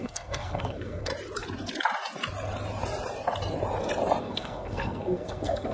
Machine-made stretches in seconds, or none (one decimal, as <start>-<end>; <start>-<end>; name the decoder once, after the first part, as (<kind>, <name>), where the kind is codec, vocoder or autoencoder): 0.0-1.1 (codec, SNAC); 4.2-5.7